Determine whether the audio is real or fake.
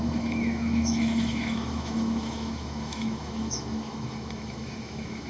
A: fake